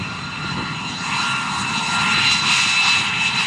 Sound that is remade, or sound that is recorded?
recorded